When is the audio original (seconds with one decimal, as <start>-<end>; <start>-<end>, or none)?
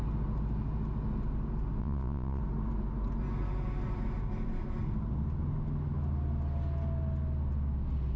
0.0-1.8; 2.4-8.2